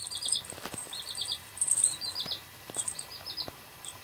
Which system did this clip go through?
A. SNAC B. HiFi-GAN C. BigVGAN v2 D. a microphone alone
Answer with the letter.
C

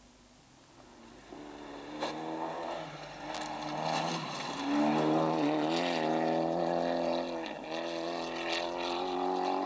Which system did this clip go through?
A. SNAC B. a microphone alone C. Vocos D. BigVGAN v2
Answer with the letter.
B